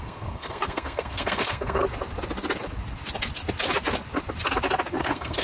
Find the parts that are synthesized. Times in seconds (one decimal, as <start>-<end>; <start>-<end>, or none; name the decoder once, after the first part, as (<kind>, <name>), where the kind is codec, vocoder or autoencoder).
0.0-1.8 (codec, SNAC); 5.0-5.4

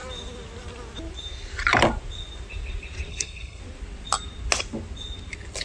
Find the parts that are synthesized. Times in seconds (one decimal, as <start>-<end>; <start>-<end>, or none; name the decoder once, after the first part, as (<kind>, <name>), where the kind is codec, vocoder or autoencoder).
3.1-3.6 (codec, SNAC)

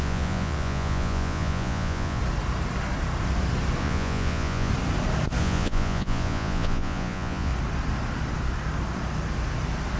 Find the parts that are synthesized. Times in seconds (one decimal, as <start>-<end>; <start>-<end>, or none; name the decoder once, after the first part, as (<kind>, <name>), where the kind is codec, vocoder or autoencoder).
0.0-2.2 (vocoder, Vocos); 3.8-4.7; 5.4-7.5

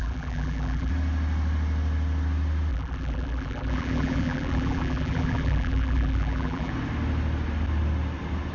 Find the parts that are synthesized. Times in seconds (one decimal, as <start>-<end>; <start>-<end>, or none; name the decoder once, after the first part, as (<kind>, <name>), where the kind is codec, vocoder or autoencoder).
0.0-0.9 (vocoder, BigVGAN v2); 2.7-6.7

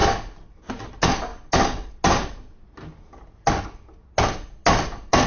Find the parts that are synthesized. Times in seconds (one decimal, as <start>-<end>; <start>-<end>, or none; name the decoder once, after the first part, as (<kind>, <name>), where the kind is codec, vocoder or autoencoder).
none